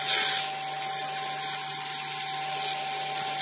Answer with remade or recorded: recorded